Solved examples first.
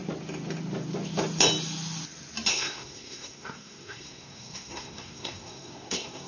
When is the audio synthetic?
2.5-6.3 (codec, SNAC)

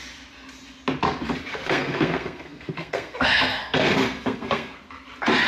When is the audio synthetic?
1.5-4.8 (codec, SNAC)

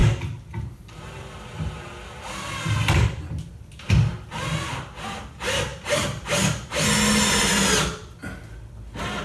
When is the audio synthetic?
none

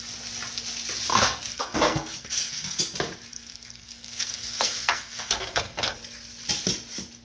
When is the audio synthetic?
1.1-2.8 (codec, SNAC); 3.3-6.0

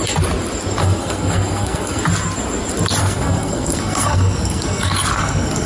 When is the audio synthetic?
0.8-2.0 (codec, SNAC); 3.0-5.7

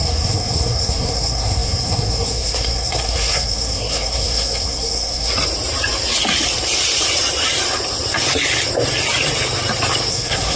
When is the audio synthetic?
0.0-5.3 (codec, SNAC); 10.1-10.6

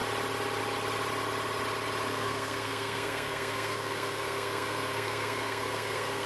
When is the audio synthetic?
2.1-6.3 (codec, SNAC)

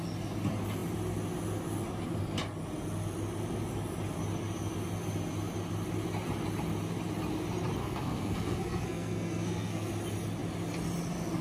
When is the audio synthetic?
7.8-9.9 (codec, SNAC)